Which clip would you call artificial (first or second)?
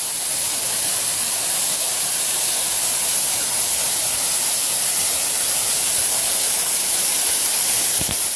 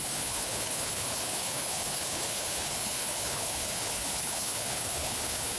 second